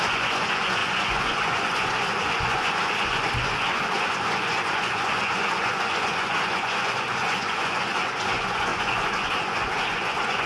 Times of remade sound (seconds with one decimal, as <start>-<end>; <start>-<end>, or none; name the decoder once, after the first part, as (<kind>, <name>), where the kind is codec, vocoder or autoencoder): 0.0-10.5 (vocoder, Vocos)